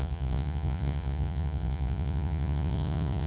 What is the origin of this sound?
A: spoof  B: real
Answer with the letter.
A